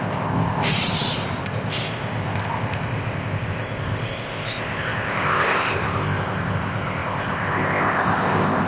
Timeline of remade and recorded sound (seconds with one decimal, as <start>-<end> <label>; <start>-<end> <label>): 0.0-0.7 remade; 0.7-1.4 recorded; 1.4-8.7 remade